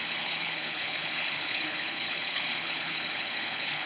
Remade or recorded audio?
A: remade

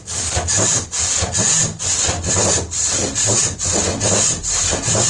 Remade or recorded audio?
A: recorded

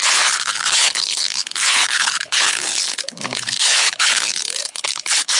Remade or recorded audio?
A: remade